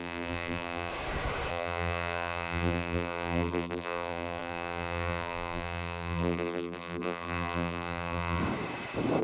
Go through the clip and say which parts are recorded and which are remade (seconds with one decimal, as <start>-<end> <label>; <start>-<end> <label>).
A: 0.0-0.9 remade; 0.9-1.5 recorded; 1.5-8.4 remade; 8.4-9.2 recorded